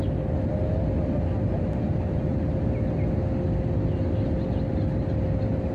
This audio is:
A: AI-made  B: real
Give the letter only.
B